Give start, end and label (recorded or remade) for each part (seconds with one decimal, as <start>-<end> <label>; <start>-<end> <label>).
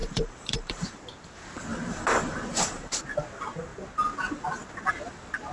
0.0-1.0 remade; 1.0-1.7 recorded; 1.7-3.0 remade; 3.0-5.5 recorded